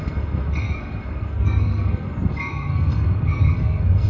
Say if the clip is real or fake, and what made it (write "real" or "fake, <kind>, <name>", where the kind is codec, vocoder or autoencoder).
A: fake, codec, SNAC